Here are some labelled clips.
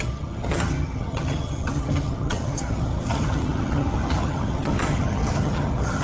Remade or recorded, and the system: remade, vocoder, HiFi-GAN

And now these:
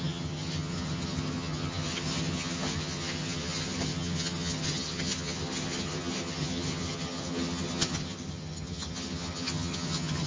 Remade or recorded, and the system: remade, vocoder, HiFi-GAN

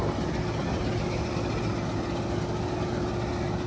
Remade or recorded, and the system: recorded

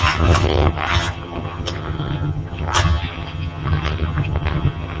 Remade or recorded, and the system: remade, vocoder, HiFi-GAN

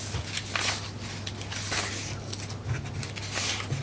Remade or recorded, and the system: recorded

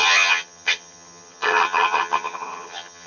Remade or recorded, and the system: remade, vocoder, HiFi-GAN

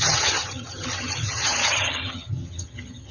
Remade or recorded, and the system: remade, vocoder, HiFi-GAN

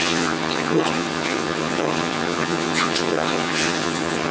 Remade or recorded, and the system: remade, vocoder, HiFi-GAN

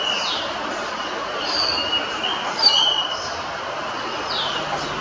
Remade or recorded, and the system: recorded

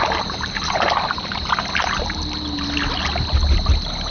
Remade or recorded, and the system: recorded